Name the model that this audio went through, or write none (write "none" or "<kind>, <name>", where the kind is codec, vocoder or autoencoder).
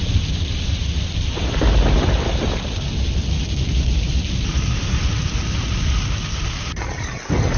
none